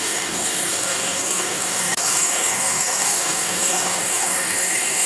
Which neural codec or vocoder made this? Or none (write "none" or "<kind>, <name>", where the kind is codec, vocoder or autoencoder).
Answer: codec, DAC